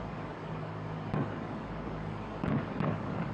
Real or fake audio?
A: fake